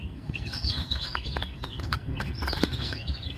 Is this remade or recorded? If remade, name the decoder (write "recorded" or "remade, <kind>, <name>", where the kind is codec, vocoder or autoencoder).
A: remade, codec, SNAC